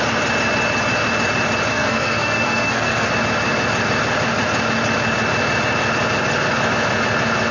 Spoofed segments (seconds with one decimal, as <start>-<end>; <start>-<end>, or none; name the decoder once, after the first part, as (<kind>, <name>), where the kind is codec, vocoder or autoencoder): 1.7-3.1 (codec, SNAC)

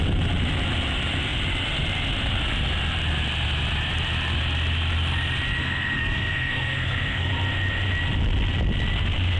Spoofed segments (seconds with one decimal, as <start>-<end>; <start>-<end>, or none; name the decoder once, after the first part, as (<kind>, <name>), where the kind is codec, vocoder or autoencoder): 5.6-7.3 (codec, SNAC)